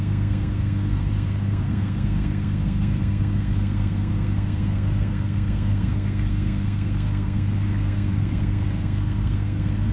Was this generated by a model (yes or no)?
yes